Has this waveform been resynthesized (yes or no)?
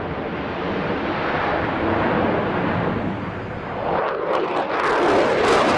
no